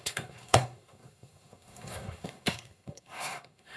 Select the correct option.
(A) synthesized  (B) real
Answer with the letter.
A